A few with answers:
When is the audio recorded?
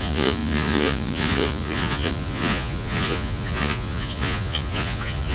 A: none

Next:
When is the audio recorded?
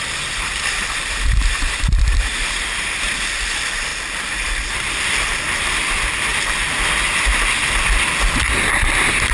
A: 3.9-4.7; 6.3-9.3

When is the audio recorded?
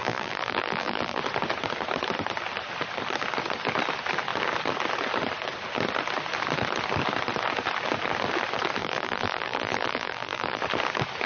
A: 1.2-8.8; 10.6-11.3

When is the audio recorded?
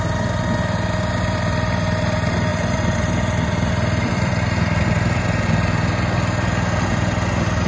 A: 0.0-2.5; 5.2-7.7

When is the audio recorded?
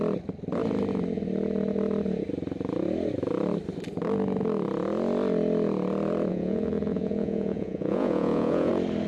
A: 0.0-6.3; 8.7-9.1